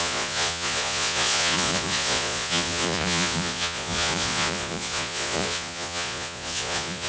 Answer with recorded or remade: remade